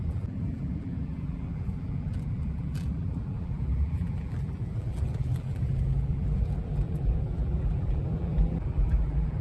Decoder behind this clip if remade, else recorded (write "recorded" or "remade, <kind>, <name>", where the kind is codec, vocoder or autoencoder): remade, vocoder, BigVGAN v2